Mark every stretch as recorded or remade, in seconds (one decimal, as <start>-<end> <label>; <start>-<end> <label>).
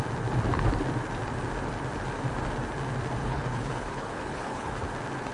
0.0-3.2 recorded; 3.2-4.8 remade; 4.8-5.3 recorded